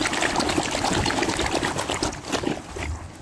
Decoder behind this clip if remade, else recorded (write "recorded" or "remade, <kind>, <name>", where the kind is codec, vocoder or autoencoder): recorded